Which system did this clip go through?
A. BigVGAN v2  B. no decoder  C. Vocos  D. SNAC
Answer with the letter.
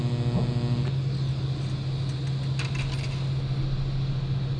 B